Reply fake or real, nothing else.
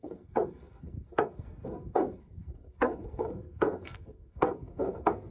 fake